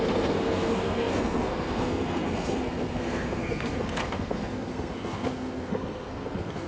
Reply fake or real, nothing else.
fake